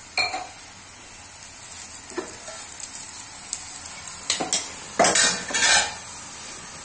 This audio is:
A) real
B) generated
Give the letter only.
A